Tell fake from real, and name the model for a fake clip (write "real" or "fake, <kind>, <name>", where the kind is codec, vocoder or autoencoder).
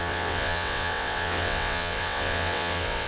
fake, vocoder, WaveNeXt